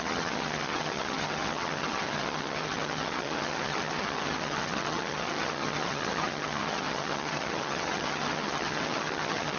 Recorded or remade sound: remade